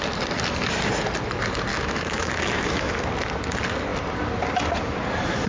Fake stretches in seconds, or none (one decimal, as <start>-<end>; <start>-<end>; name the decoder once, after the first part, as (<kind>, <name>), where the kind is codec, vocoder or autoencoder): 1.7-2.9 (autoencoder, DAC-VAE)